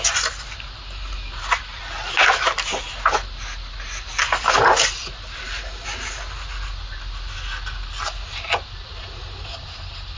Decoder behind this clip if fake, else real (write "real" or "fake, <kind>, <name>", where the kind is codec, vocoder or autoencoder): real